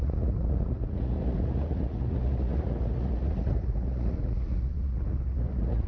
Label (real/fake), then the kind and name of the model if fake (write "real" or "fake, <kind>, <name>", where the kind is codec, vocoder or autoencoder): fake, vocoder, Vocos